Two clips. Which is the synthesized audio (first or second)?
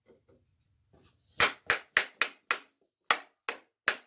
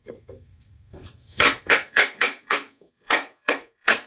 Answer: second